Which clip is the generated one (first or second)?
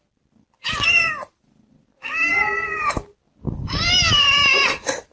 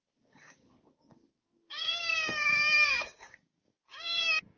second